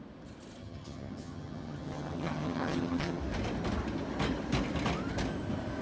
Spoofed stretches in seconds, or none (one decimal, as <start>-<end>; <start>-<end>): 0.6-3.2